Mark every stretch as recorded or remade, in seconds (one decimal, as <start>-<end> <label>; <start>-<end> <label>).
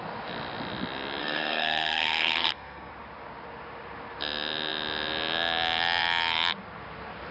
0.0-1.2 recorded; 1.2-2.9 remade; 2.9-7.3 recorded